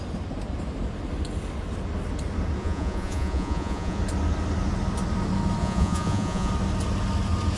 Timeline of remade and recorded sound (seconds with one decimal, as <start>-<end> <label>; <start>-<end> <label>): 0.0-2.6 recorded; 2.6-4.0 remade; 4.0-5.6 recorded; 5.6-6.5 remade; 6.5-7.6 recorded